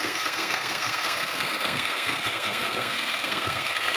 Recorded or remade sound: remade